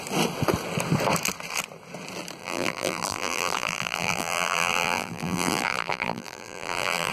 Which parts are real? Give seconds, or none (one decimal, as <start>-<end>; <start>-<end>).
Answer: 0.0-2.4